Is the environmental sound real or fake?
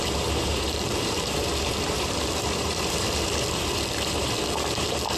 fake